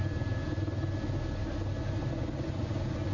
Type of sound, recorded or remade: recorded